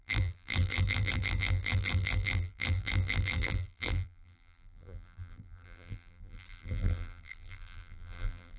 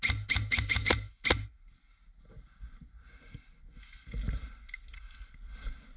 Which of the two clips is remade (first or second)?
first